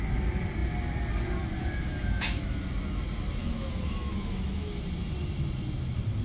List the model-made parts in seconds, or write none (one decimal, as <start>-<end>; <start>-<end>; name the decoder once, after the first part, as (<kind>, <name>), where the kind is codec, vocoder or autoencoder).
1.6-2.6 (autoencoder, DAC-VAE); 3.4-4.8